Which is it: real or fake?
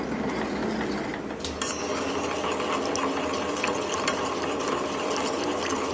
real